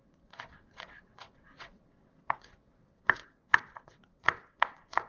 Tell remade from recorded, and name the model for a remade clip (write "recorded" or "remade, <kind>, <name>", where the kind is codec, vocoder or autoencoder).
remade, vocoder, WaveNeXt